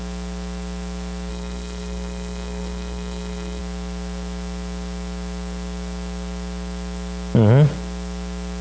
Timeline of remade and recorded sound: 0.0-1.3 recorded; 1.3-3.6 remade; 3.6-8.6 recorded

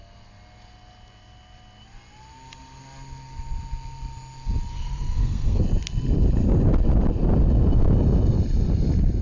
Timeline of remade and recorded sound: 0.0-4.7 recorded; 4.7-5.6 remade; 5.6-9.2 recorded

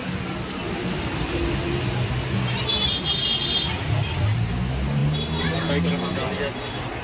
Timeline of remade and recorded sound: 0.0-7.0 recorded

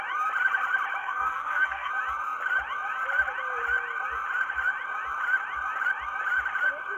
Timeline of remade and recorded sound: 0.0-1.0 recorded; 1.0-1.9 remade; 1.9-7.0 recorded

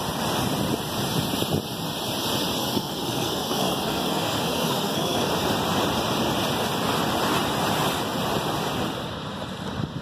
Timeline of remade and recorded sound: 0.0-2.6 recorded; 2.6-5.3 remade; 5.3-10.0 recorded

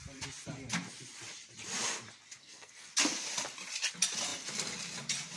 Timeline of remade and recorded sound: 0.0-2.4 recorded; 2.4-2.9 remade; 2.9-5.4 recorded

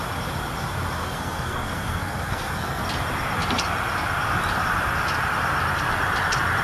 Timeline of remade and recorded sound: 0.0-1.0 recorded; 1.0-2.8 remade; 2.8-6.6 recorded

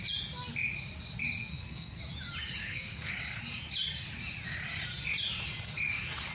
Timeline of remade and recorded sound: 0.0-1.4 recorded; 1.4-2.0 remade; 2.0-2.6 recorded; 2.6-3.1 remade; 3.1-6.3 recorded